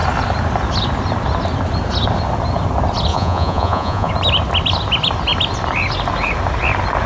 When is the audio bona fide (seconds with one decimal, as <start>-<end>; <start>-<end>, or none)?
0.0-3.1; 4.1-7.1